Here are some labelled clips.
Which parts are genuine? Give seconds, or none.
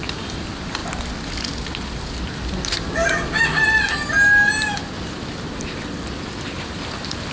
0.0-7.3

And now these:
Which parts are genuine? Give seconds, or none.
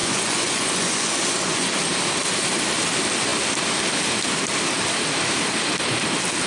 1.7-6.5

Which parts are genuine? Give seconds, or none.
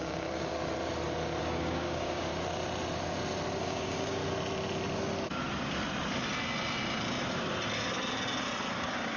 0.5-1.4; 2.3-3.6; 4.2-8.7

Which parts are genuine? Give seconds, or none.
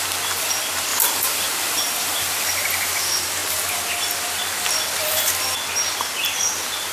0.0-0.9; 2.9-6.9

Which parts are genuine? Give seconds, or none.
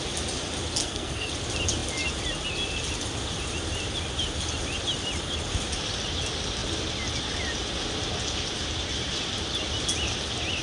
0.0-0.8; 1.3-10.6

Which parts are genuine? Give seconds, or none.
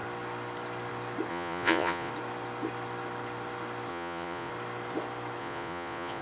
0.0-1.3; 2.1-3.9; 4.5-5.4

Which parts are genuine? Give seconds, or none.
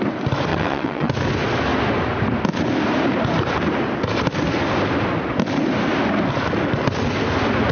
0.0-0.5; 1.1-7.7